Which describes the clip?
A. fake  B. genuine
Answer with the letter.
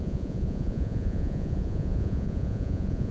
A